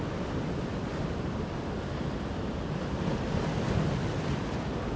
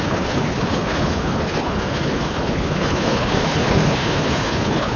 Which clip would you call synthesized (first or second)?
second